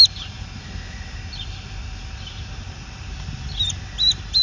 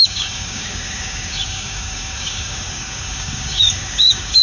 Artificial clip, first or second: second